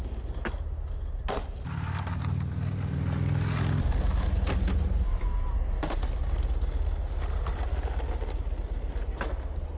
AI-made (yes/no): no